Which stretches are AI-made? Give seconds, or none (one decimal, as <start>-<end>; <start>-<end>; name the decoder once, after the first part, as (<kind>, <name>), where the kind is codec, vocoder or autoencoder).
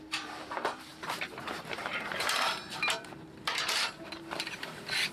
0.0-5.1 (vocoder, BigVGAN v2)